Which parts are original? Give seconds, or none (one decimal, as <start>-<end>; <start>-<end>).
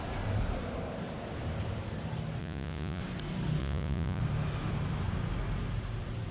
0.0-2.4; 3.0-3.6; 4.2-6.3